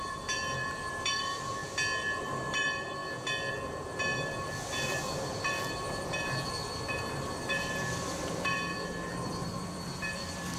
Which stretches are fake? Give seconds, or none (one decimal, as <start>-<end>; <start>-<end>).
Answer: 0.0-1.6; 2.2-3.0; 3.5-10.6